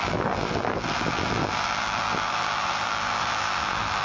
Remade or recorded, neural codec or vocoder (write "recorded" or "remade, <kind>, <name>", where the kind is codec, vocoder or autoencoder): remade, vocoder, BigVGAN v2